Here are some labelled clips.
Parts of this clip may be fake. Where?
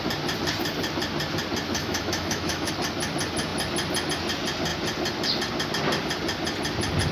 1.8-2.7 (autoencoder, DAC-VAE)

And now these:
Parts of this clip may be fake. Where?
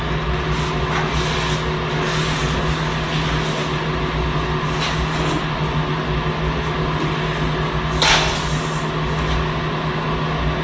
none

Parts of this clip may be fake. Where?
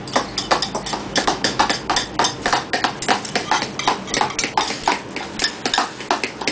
1.0-1.6 (autoencoder, DAC-VAE)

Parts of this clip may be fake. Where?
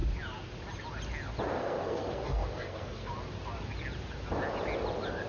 1.6-3.1 (codec, SNAC)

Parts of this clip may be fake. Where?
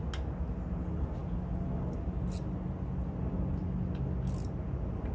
none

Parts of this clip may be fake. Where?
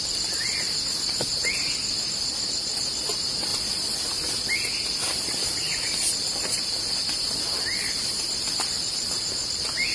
none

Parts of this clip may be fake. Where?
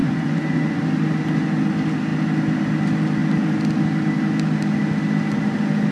0.0-0.8 (vocoder, Vocos)